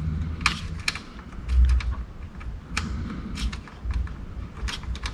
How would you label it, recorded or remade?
recorded